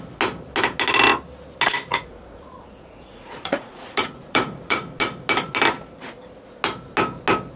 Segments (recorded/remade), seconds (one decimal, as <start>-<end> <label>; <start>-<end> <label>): 0.0-1.9 recorded; 1.9-4.8 remade; 4.8-7.6 recorded